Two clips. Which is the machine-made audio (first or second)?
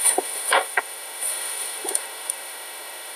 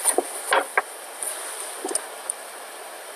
first